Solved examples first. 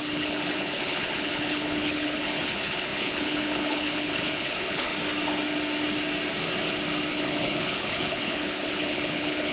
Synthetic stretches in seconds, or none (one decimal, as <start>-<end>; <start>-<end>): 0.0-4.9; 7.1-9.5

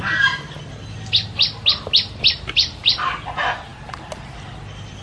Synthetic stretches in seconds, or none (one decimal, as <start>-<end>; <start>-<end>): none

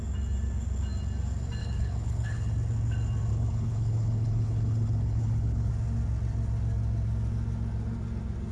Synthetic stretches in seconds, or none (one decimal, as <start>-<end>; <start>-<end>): 1.6-2.5; 3.3-5.7